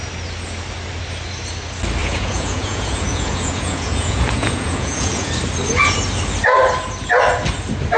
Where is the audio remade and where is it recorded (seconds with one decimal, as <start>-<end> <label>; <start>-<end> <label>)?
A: 0.0-2.0 recorded; 2.0-5.3 remade; 5.3-8.0 recorded